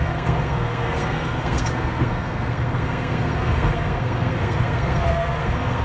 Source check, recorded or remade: remade